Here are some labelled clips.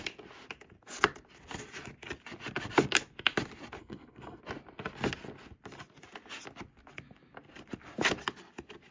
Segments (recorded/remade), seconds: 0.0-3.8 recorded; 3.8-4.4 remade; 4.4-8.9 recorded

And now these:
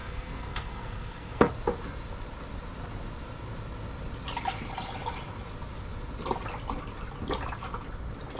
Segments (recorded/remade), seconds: 0.0-1.5 remade; 1.5-8.4 recorded

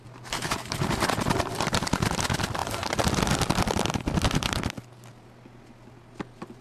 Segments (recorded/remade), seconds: 0.0-0.4 recorded; 0.4-2.1 remade; 2.1-6.6 recorded

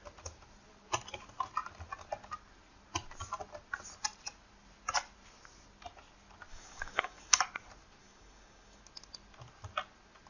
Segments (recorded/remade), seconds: 0.0-6.5 recorded; 6.5-7.4 remade; 7.4-8.0 recorded; 8.0-8.8 remade; 8.8-10.3 recorded

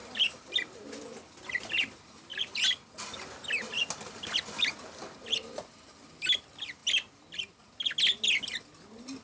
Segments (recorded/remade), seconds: 0.0-9.2 recorded

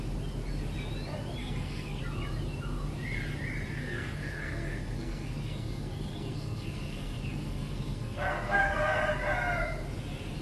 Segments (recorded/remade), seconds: 0.0-1.4 recorded; 1.4-2.0 remade; 2.0-3.8 recorded; 3.8-9.0 remade; 9.0-10.4 recorded